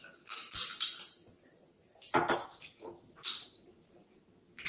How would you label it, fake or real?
real